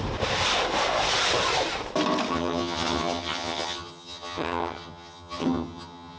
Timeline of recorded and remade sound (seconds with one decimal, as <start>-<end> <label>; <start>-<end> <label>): 0.0-2.3 recorded; 2.3-6.2 remade